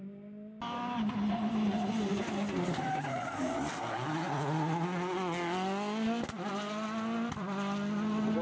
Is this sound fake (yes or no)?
no